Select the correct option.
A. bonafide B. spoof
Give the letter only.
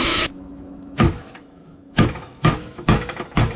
B